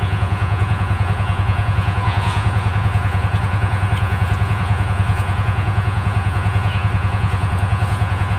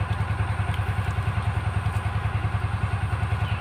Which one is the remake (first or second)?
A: first